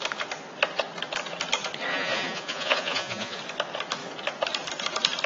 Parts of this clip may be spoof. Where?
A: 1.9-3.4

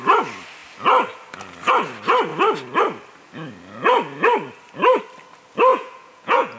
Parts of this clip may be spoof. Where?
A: 5.7-6.6

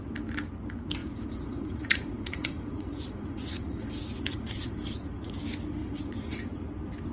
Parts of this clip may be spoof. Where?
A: 1.0-5.3; 5.8-6.4

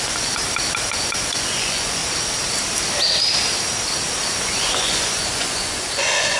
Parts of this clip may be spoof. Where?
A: 0.0-0.4; 0.9-2.0; 4.4-6.4

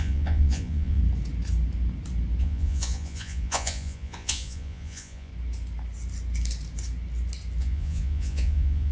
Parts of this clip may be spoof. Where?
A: 0.0-1.0; 2.4-5.3; 7.6-8.9

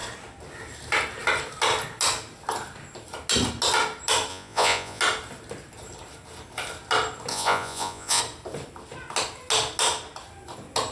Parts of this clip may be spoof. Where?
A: 4.3-5.0; 7.3-8.2

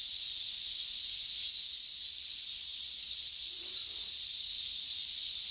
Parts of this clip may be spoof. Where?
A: 2.6-3.7

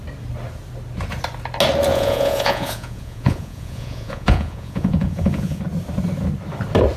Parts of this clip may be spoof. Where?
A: 1.9-5.6